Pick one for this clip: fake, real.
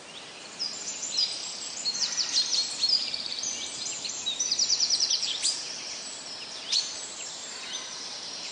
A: fake